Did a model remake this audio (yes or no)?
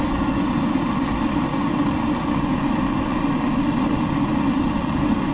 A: no